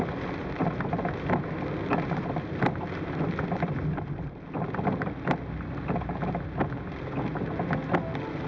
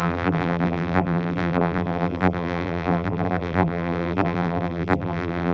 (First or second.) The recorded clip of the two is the first